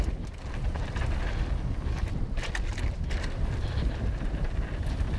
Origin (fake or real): real